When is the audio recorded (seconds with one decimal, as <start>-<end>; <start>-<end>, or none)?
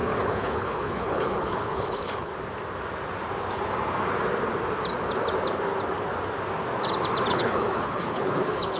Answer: 2.3-7.3